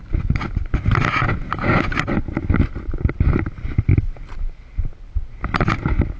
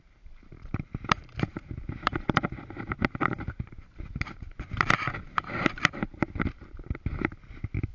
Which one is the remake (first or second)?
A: second